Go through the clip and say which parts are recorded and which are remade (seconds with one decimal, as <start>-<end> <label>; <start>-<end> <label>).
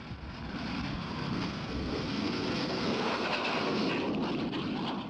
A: 0.0-0.9 recorded; 0.9-3.9 remade; 3.9-5.1 recorded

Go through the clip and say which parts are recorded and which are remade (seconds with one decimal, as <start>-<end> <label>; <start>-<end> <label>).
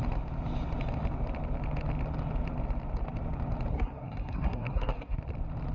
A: 0.0-3.7 recorded; 3.7-5.2 remade; 5.2-5.7 recorded